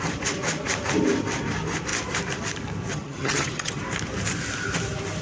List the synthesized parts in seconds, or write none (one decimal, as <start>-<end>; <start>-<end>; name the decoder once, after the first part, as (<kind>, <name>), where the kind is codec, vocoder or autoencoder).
2.9-3.8 (vocoder, HiFi-GAN)